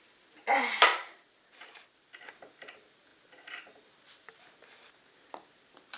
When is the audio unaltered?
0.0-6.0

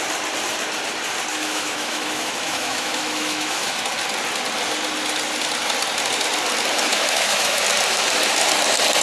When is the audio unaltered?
0.0-1.3; 3.8-6.9; 7.6-9.0

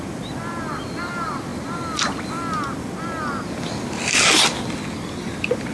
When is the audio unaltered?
0.0-5.7

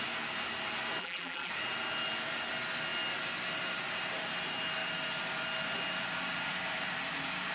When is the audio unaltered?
0.0-1.0; 1.5-7.5